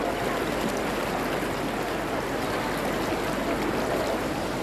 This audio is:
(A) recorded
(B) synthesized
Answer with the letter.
A